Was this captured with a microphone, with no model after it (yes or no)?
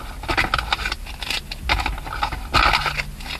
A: yes